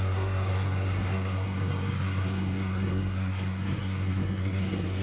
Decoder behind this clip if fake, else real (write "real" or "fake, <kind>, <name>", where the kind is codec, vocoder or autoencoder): fake, codec, SNAC